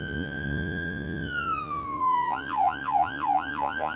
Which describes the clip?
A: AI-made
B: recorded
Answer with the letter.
A